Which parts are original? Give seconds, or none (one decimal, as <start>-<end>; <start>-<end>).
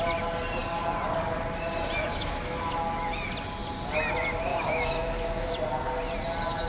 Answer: 0.0-2.1; 2.7-4.5; 5.5-6.7